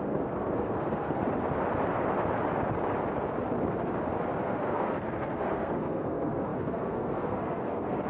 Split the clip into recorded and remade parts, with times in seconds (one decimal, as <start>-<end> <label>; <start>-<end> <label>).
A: 0.0-1.2 remade; 1.2-4.4 recorded; 4.4-8.1 remade